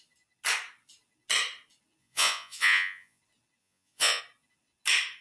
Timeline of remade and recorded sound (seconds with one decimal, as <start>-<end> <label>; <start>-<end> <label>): 0.0-2.0 recorded; 2.0-3.2 remade; 3.2-3.6 recorded; 3.6-4.2 remade; 4.2-5.2 recorded